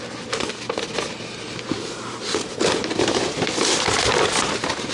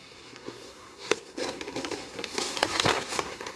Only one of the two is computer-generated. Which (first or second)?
second